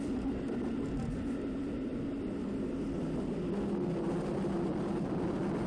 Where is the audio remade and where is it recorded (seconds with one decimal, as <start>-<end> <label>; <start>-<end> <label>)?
0.0-5.7 recorded